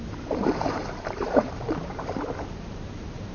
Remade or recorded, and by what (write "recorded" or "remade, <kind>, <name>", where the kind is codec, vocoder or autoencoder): remade, vocoder, BigVGAN v2